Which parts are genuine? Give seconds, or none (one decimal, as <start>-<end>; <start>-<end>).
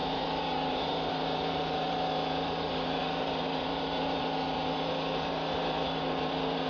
none